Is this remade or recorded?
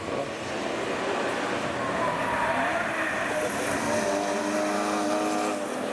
recorded